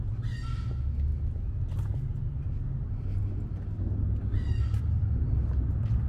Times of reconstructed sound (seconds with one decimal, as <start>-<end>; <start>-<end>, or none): none